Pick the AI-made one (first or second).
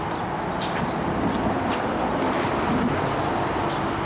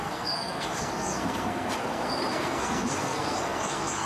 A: second